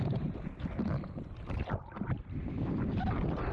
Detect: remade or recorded recorded